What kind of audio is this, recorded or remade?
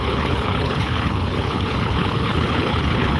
remade